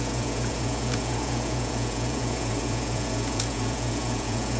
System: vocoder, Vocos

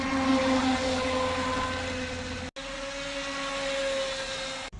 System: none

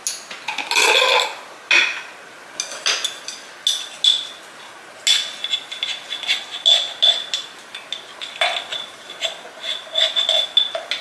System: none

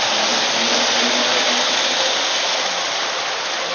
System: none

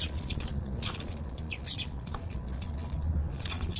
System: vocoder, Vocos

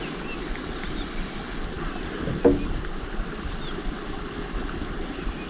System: none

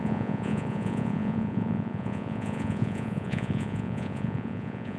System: vocoder, Vocos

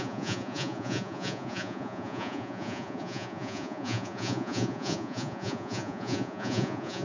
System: vocoder, Vocos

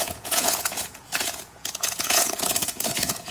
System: vocoder, Vocos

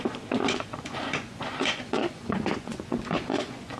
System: vocoder, Vocos